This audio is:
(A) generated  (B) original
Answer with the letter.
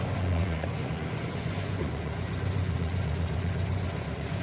A